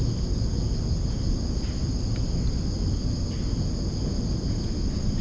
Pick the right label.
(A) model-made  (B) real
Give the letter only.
B